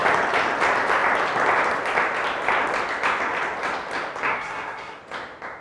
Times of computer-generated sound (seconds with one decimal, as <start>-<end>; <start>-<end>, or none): 4.3-5.0